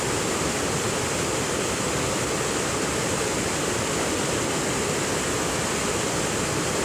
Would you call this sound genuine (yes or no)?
no